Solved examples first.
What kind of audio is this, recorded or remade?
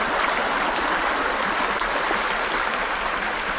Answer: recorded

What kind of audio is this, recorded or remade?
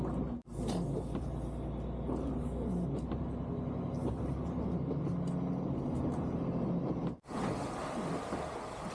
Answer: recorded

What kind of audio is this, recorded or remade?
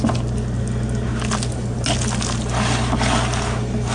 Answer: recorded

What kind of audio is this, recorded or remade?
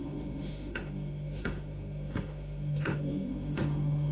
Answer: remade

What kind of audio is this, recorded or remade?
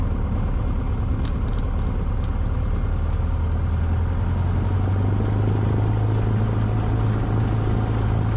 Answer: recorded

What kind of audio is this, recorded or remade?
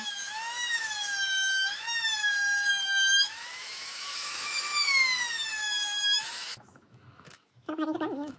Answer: remade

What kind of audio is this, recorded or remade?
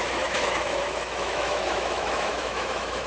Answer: remade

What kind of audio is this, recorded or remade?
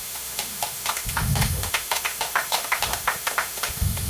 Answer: remade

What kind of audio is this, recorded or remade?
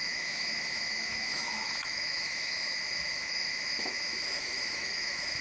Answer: remade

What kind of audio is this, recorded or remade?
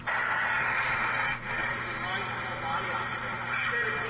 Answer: recorded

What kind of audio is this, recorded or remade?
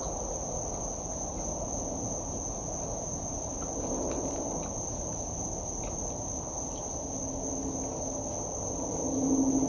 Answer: recorded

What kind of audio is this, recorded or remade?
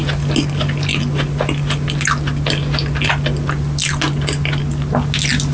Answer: recorded